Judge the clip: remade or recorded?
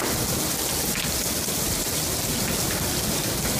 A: recorded